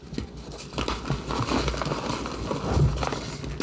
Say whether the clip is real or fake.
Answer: real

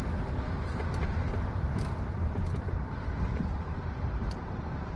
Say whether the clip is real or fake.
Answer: fake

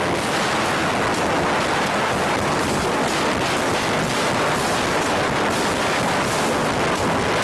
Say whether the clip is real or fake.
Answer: real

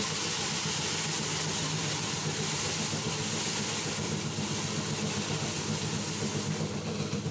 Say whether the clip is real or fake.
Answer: real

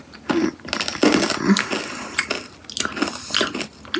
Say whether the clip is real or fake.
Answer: real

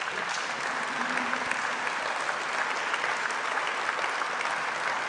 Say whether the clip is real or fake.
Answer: real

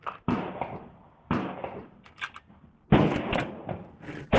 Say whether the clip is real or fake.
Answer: real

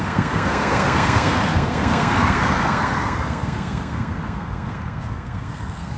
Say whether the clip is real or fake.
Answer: fake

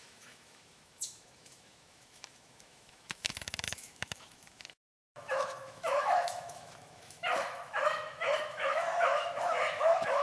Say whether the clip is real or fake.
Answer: fake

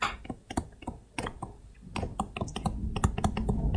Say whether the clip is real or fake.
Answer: real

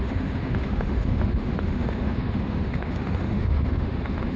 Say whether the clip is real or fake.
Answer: fake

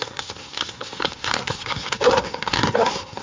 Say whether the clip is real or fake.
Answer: fake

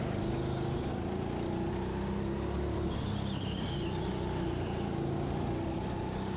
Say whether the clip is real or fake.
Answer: real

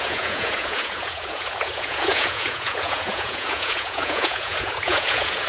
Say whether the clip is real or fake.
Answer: fake